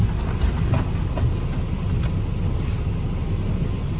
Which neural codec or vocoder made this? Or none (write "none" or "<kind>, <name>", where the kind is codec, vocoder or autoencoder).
none